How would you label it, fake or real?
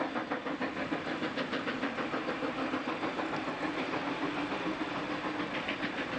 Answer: real